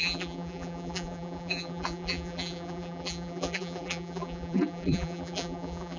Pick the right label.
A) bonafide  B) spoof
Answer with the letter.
B